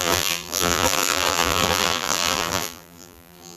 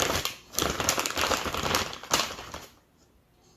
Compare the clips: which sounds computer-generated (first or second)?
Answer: first